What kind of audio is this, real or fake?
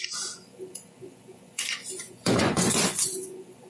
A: fake